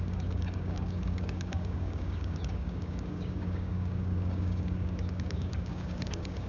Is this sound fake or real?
fake